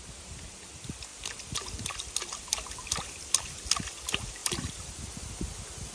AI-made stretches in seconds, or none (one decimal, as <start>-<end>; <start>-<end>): 4.4-4.9